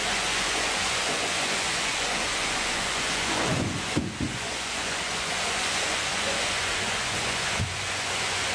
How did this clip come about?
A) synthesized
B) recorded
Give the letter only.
A